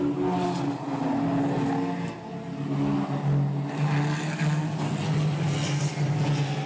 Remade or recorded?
recorded